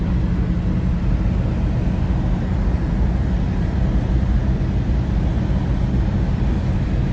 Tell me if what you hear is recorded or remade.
recorded